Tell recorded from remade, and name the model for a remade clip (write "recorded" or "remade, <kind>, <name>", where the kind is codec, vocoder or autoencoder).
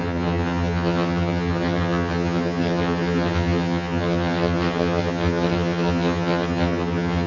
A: remade, vocoder, HiFi-GAN